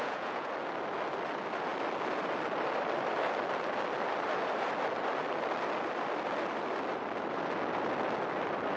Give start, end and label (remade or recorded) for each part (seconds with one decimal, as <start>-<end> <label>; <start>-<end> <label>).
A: 0.0-0.5 remade; 0.5-8.8 recorded